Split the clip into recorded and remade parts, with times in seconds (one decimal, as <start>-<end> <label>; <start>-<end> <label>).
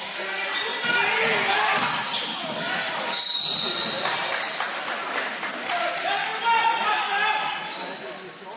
0.0-8.6 recorded